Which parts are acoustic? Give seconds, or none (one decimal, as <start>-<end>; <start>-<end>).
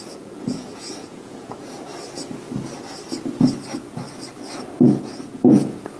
1.9-5.0